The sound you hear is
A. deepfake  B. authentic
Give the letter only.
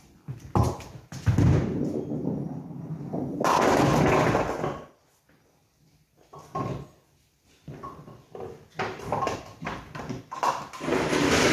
B